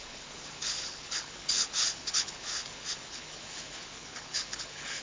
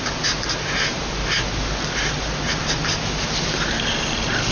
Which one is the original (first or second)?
second